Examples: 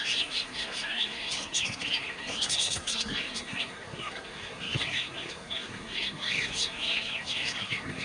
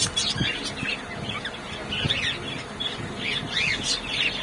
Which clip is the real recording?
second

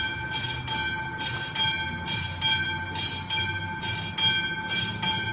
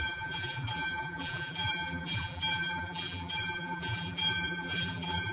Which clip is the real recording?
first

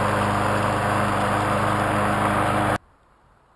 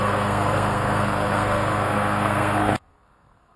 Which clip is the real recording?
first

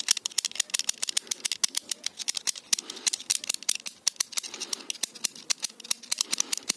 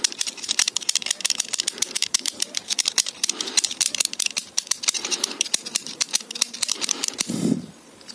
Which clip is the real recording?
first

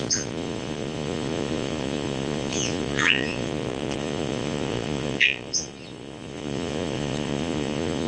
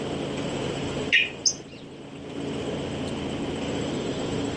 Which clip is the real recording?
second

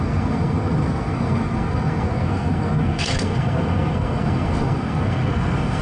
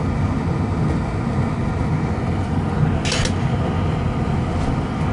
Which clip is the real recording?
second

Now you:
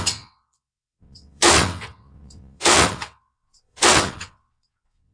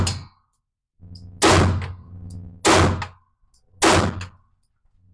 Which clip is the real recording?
second